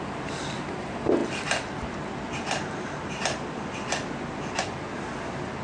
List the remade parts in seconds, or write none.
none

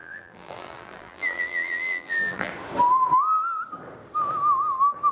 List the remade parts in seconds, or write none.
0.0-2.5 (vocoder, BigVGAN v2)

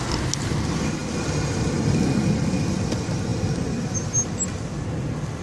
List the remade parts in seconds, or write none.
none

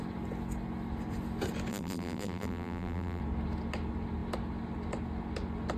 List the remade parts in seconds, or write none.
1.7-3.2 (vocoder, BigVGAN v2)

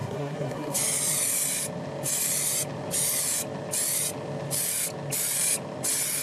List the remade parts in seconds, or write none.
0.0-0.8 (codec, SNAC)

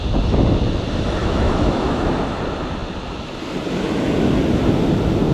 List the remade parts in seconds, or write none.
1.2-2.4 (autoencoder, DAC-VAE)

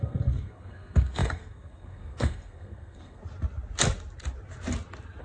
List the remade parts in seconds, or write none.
0.0-3.2 (codec, SNAC)

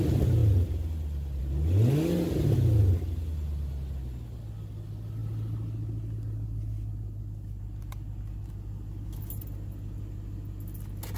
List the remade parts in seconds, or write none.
none